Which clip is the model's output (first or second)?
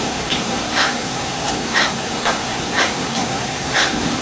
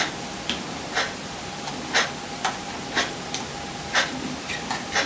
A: first